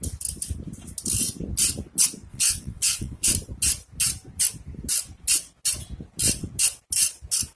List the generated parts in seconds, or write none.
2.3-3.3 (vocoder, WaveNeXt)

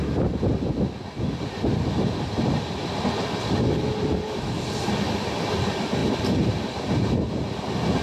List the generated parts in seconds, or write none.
none

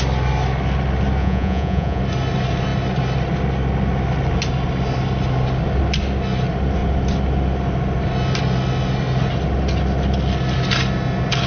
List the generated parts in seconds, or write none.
1.2-2.0 (vocoder, Vocos)

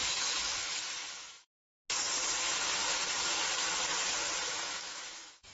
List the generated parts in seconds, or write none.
0.0-1.5 (autoencoder, DAC-VAE); 4.5-5.5

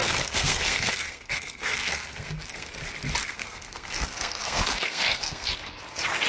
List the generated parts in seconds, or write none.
0.0-2.7 (codec, SNAC); 3.2-5.5

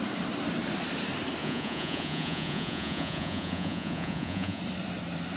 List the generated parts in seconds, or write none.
1.4-4.6 (vocoder, Vocos)